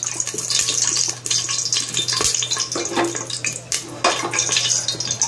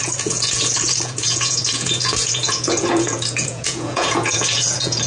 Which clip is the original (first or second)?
first